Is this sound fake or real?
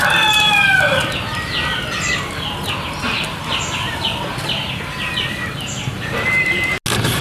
real